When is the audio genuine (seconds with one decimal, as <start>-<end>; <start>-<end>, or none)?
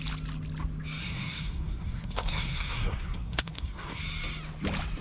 0.0-1.0; 4.0-5.0